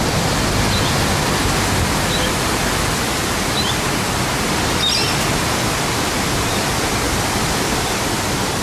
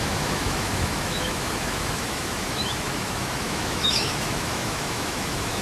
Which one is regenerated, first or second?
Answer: second